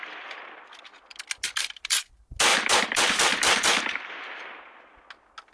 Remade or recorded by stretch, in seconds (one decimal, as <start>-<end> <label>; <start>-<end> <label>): 0.0-1.4 recorded; 1.4-2.1 remade; 2.1-2.5 recorded; 2.5-5.0 remade; 5.0-5.5 recorded